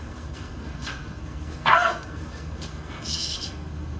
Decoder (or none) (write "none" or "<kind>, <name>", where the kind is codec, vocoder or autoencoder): codec, SNAC